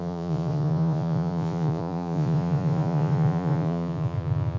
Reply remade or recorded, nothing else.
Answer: remade